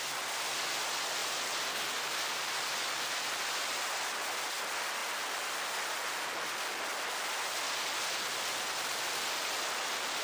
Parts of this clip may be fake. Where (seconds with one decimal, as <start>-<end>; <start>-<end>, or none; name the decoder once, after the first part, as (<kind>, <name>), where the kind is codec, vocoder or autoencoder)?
1.2-2.4 (vocoder, BigVGAN v2)